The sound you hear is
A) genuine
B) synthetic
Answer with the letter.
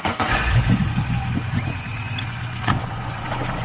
B